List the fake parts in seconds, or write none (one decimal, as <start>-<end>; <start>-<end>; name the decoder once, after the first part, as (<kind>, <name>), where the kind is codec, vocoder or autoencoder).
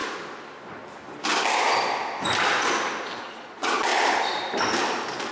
3.2-3.9 (vocoder, Vocos)